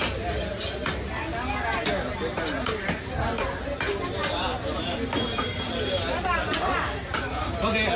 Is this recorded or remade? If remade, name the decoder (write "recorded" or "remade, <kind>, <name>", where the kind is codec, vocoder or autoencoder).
recorded